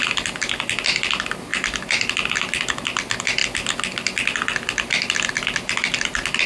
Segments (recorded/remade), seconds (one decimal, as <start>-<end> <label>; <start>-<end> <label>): 0.0-6.5 recorded